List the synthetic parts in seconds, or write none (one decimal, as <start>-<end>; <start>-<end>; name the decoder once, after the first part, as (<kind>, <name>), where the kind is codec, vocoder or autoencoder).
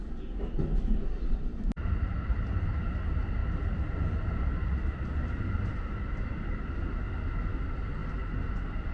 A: none